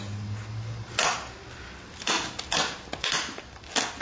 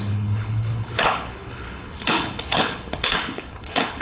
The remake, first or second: second